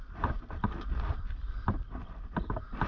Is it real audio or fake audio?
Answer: real